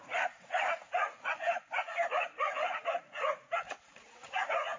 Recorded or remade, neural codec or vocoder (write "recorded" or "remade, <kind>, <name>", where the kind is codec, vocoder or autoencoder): remade, vocoder, Vocos